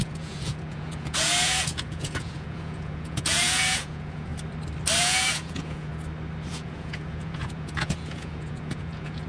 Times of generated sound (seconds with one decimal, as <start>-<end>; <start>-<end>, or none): 0.0-4.3; 5.0-5.9; 6.5-9.3